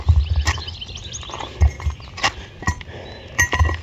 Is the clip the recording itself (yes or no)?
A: yes